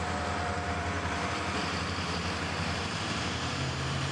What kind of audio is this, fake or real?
fake